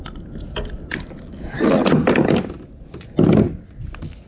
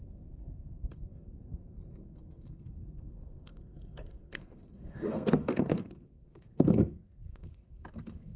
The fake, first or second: second